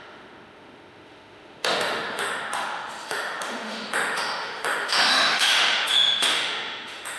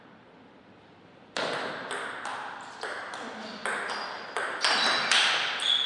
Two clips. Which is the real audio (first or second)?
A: second